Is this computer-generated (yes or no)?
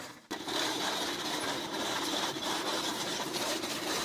yes